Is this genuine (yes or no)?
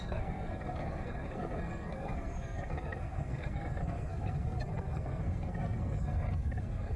no